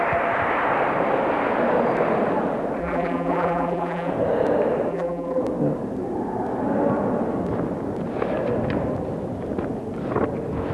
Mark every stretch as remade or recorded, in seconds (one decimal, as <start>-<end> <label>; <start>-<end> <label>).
0.0-2.8 recorded; 2.8-4.1 remade; 4.1-4.9 recorded; 4.9-5.4 remade; 5.4-10.7 recorded

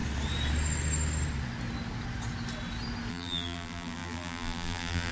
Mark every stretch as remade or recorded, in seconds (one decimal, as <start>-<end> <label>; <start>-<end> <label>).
0.0-3.1 recorded; 3.1-5.1 remade

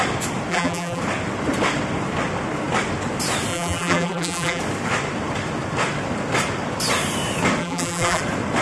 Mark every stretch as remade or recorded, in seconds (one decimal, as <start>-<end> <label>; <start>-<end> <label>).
0.0-0.5 recorded; 0.5-1.0 remade; 1.0-3.5 recorded; 3.5-4.6 remade; 4.6-7.6 recorded; 7.6-8.2 remade; 8.2-8.6 recorded

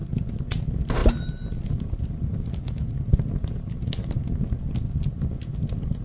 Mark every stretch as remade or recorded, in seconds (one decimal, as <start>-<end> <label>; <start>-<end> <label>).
0.0-6.0 recorded

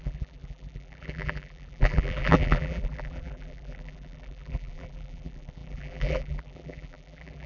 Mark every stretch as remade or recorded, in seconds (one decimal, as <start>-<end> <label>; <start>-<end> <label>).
0.0-7.5 remade